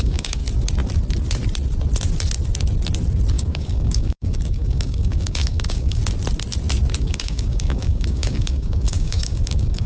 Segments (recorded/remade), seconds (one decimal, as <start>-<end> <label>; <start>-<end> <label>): 0.0-0.4 remade; 0.4-3.3 recorded; 3.3-6.0 remade; 6.0-7.0 recorded; 7.0-9.9 remade